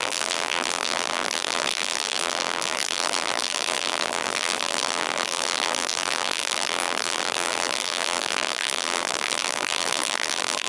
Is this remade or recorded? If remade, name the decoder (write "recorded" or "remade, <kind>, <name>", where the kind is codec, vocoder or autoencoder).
remade, vocoder, BigVGAN v2